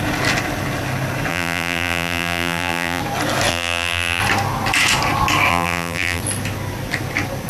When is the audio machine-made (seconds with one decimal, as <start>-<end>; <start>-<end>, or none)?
1.3-3.0; 3.5-4.2; 5.5-6.2